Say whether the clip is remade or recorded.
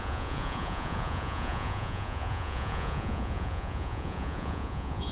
remade